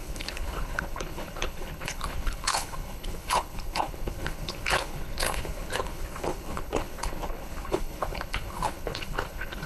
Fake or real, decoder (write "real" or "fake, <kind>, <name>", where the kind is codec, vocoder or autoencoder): fake, codec, HILCodec